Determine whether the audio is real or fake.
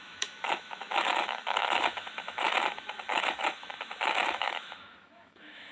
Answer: fake